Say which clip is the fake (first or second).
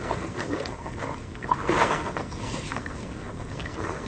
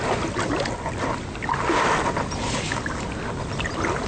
first